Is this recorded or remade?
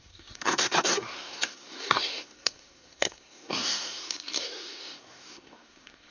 remade